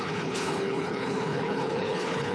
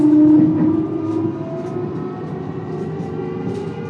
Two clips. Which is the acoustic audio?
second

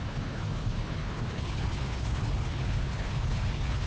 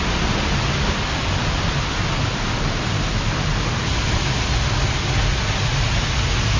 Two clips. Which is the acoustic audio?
second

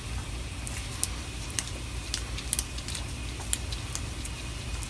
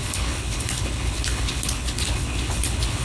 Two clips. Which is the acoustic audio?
first